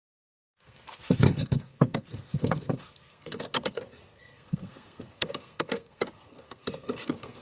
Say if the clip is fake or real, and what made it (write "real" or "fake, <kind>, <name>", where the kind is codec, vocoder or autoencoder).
fake, codec, SNAC